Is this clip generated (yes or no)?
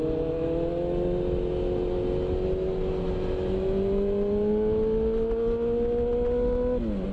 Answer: no